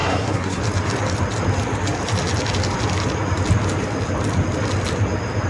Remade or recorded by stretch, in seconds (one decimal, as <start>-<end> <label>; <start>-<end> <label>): 0.0-0.6 remade; 0.6-5.5 recorded